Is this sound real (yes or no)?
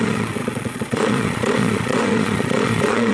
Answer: no